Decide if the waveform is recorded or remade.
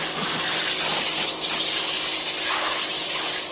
recorded